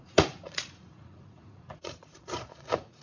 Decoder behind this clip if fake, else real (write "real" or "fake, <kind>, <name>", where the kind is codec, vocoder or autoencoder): fake, vocoder, Vocos